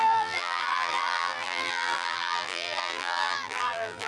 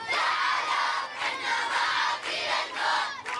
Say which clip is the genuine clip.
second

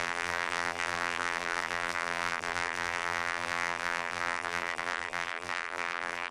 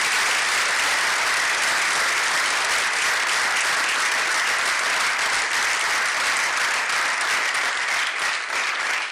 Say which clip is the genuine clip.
second